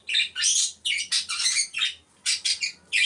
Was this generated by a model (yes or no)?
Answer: no